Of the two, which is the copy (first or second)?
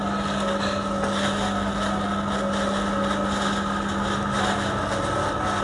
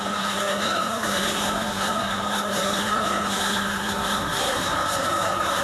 second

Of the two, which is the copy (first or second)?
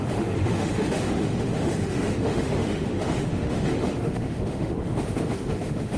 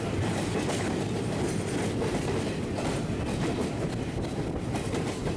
first